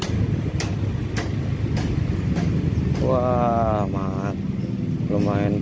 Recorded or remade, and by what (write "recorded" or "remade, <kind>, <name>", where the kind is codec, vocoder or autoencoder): recorded